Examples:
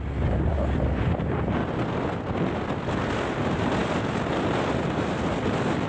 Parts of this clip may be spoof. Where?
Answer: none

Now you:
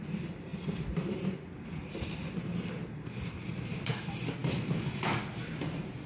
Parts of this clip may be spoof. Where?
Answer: none

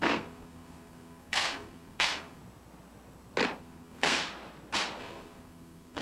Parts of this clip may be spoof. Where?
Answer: 0.0-2.4 (codec, SNAC); 3.6-4.2; 5.0-6.0

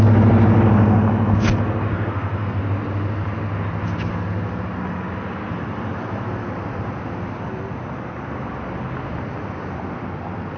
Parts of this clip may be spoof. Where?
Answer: 1.9-2.6 (codec, SNAC)